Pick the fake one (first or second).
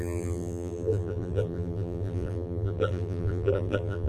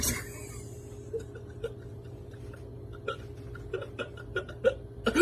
first